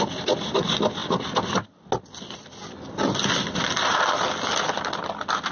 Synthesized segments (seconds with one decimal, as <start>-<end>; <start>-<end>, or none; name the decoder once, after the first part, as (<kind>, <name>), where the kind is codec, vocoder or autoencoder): none